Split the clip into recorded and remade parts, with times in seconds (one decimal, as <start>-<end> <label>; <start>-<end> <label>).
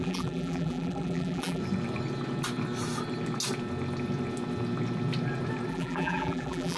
0.0-1.6 remade; 1.6-5.7 recorded; 5.7-6.8 remade